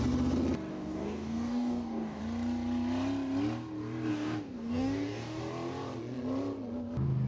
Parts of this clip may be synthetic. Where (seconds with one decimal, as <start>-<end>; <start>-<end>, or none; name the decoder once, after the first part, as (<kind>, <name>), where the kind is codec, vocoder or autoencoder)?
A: 0.7-2.2 (codec, DAC); 4.1-5.4